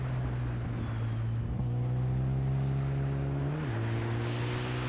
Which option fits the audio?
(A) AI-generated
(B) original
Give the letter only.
B